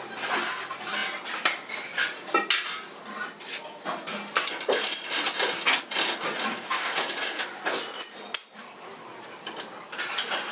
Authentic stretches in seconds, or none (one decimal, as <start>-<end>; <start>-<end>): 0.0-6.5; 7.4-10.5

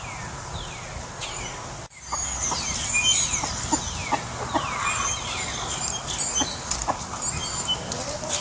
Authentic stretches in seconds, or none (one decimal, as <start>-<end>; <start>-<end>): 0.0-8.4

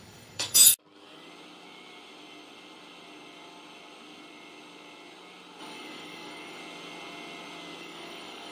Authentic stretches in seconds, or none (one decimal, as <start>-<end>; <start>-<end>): 0.7-5.6; 6.6-7.8

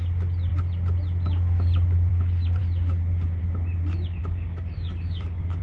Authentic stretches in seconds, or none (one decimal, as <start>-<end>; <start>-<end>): 0.0-4.2

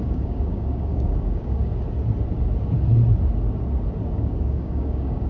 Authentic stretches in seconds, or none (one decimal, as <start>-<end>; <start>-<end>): 1.7-4.1

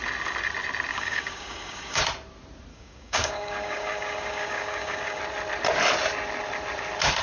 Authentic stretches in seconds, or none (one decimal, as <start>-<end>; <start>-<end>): 0.0-0.9; 2.0-2.7; 5.2-7.2

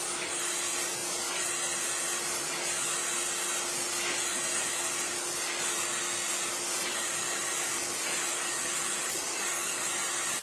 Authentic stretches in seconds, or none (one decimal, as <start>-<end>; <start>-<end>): 0.0-6.9; 7.4-8.3; 9.9-10.4

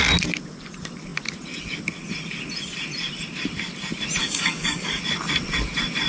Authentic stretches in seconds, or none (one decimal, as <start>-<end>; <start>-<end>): 0.0-4.2; 5.0-6.1